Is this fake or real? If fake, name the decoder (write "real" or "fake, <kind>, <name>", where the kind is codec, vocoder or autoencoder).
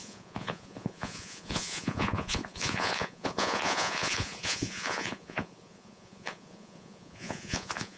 fake, vocoder, Vocos